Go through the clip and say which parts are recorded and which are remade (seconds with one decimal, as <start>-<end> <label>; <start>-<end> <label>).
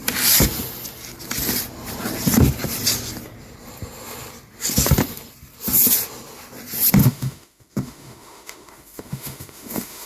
0.0-7.0 recorded; 7.0-10.1 remade